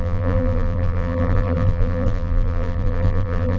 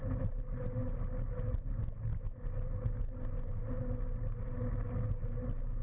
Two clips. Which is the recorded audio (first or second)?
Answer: second